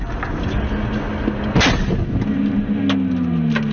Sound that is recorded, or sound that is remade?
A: recorded